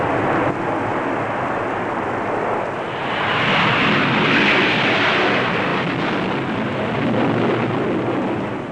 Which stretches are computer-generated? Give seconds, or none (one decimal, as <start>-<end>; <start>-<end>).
none